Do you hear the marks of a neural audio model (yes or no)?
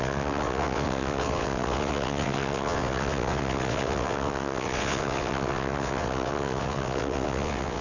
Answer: yes